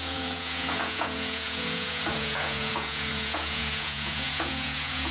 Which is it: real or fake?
fake